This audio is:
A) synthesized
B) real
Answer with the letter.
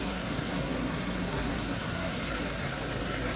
A